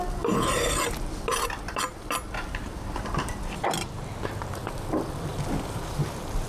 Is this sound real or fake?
real